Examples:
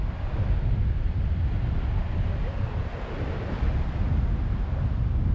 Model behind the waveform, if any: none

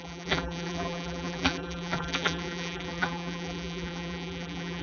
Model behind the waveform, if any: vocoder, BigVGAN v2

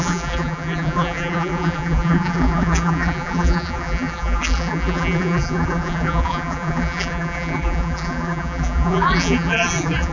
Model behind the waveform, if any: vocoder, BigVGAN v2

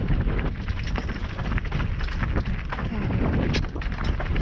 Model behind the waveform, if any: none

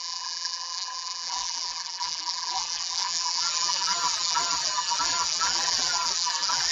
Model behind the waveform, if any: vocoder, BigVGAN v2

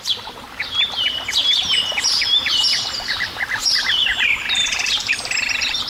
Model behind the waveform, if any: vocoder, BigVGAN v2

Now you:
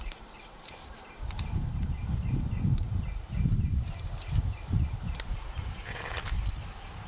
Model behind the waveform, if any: vocoder, BigVGAN v2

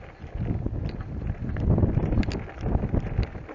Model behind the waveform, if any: none